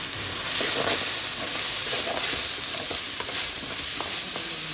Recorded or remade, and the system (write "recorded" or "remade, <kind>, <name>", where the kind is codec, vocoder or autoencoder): recorded